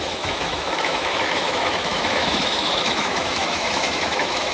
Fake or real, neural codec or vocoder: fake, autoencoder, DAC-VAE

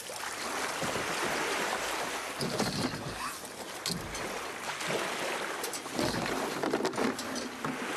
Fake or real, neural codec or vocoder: real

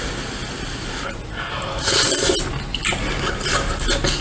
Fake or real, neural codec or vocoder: real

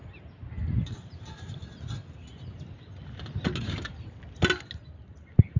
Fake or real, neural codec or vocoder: real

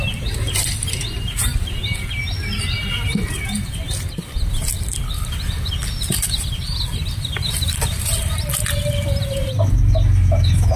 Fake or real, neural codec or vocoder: real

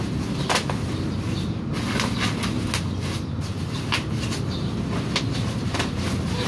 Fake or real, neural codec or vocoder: real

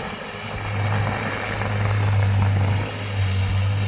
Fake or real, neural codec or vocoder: real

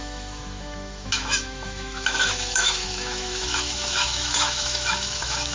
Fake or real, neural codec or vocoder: fake, autoencoder, DAC-VAE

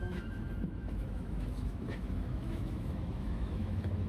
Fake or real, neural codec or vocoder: fake, autoencoder, DAC-VAE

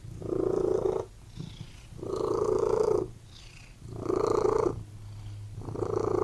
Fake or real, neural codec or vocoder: real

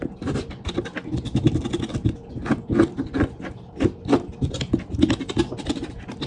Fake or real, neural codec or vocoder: real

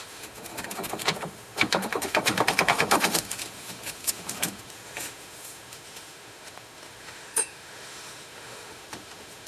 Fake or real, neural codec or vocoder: fake, autoencoder, DAC-VAE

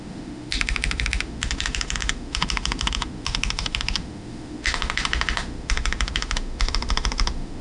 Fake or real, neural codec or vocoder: fake, autoencoder, DAC-VAE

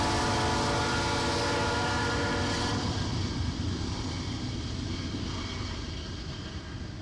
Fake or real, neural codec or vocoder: real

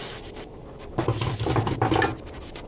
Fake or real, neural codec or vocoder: real